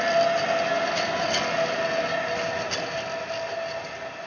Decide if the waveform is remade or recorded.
recorded